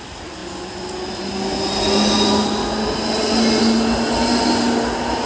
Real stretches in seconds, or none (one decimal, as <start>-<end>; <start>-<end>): 0.0-5.3